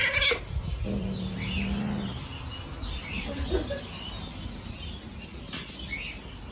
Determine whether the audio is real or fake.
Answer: real